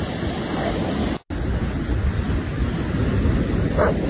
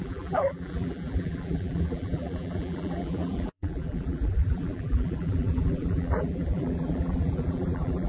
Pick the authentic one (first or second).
first